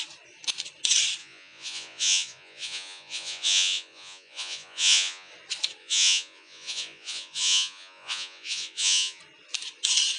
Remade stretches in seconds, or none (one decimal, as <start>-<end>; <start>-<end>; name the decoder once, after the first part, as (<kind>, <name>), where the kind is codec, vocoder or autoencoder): 1.2-5.3 (vocoder, Vocos); 5.8-9.2